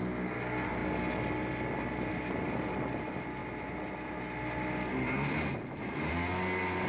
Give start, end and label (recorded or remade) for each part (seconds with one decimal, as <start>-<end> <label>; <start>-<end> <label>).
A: 0.0-6.9 recorded